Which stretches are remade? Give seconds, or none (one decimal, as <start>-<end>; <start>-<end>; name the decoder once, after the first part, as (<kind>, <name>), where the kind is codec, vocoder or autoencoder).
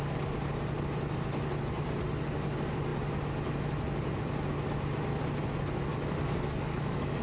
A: 5.9-7.2 (codec, DAC)